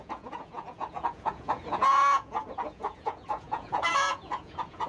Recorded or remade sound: remade